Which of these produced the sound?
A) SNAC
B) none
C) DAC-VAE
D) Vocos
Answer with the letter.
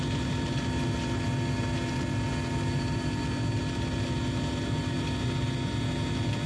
B